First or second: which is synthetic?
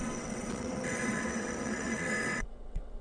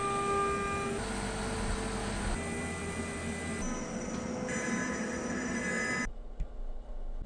first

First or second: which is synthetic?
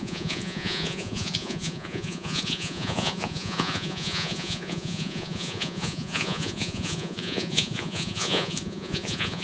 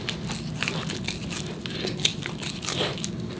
first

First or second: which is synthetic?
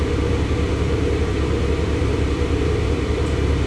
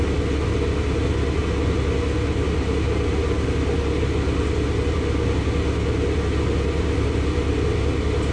first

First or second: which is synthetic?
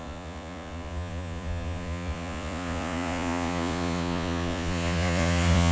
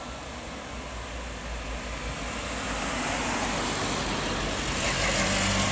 first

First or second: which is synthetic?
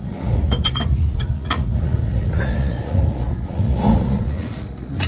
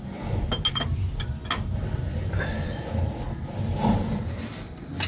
first